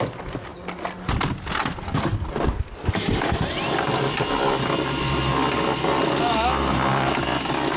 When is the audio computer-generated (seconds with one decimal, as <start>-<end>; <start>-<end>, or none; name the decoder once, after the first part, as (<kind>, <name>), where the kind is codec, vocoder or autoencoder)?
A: none